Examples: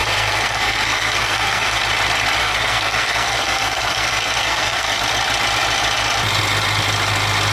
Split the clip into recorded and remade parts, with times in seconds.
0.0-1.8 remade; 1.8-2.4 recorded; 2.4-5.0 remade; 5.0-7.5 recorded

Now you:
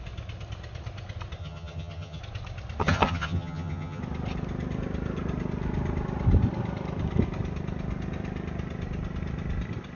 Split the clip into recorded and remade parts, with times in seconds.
0.0-1.4 recorded; 1.4-2.2 remade; 2.2-2.8 recorded; 2.8-4.0 remade; 4.0-10.0 recorded